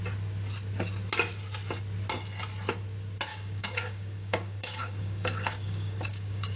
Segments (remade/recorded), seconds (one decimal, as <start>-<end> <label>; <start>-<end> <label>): 0.0-3.3 recorded; 3.3-6.6 remade